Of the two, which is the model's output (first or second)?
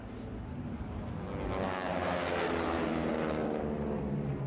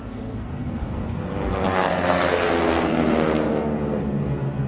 second